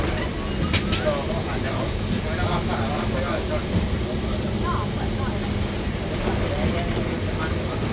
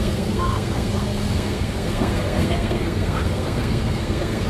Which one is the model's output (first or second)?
second